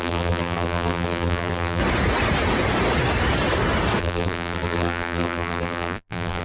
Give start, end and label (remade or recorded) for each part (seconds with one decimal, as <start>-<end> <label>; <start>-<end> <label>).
0.0-1.8 remade; 1.8-4.0 recorded; 4.0-6.4 remade

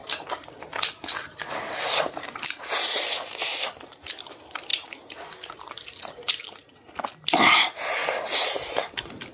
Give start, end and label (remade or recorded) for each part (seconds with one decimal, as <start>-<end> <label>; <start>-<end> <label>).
0.0-3.5 remade; 3.5-4.3 recorded; 4.3-8.0 remade; 8.0-8.7 recorded; 8.7-9.3 remade

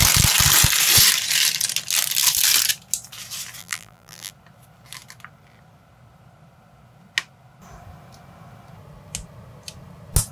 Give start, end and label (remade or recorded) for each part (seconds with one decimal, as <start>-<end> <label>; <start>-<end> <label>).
0.0-3.6 recorded; 3.6-4.3 remade; 4.3-10.3 recorded

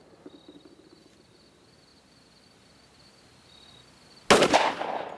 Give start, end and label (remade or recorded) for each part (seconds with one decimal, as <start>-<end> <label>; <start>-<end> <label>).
0.0-5.2 recorded